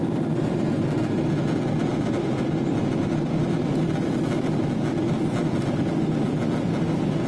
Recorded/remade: recorded